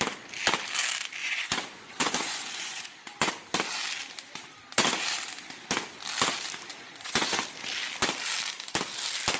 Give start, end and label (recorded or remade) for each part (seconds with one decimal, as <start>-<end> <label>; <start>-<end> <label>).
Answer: 0.0-1.2 recorded; 1.2-3.3 remade; 3.3-6.7 recorded; 6.7-7.4 remade; 7.4-9.4 recorded

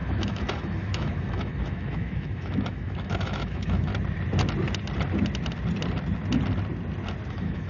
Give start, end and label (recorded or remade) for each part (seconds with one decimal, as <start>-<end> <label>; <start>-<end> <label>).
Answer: 0.0-3.9 remade; 3.9-7.3 recorded; 7.3-7.7 remade

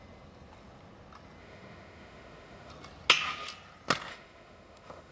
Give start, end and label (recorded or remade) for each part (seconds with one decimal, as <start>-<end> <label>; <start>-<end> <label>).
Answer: 0.0-1.4 recorded; 1.4-2.7 remade; 2.7-4.1 recorded; 4.1-5.1 remade

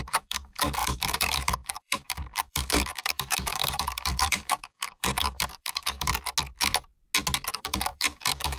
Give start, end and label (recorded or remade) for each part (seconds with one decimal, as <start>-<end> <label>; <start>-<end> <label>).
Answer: 0.0-6.1 remade; 6.1-7.5 recorded; 7.5-8.6 remade

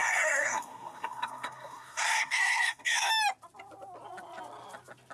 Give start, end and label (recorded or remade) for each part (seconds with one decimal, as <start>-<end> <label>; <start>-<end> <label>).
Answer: 0.0-3.1 remade; 3.1-5.1 recorded